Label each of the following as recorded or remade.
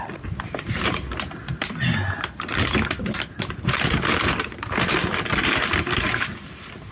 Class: recorded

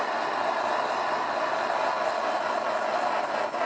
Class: recorded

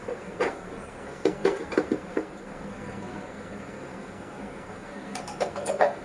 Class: remade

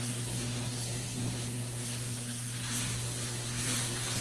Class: remade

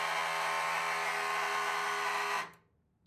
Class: recorded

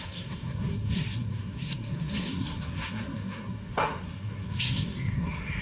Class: remade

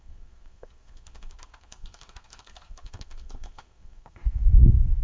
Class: remade